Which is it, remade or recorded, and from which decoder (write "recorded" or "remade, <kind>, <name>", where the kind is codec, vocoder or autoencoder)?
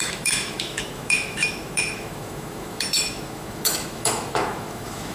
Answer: remade, autoencoder, DAC-VAE